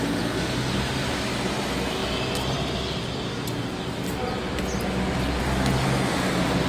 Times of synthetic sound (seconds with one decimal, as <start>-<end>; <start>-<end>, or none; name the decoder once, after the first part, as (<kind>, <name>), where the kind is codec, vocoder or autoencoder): none